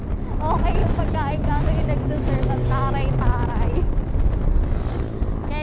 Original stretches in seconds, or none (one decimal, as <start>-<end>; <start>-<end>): 0.0-5.6